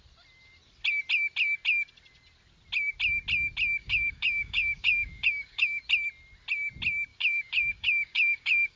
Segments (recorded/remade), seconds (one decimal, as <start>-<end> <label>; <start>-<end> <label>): 0.0-3.8 recorded; 3.8-5.8 remade; 5.8-7.1 recorded; 7.1-8.8 remade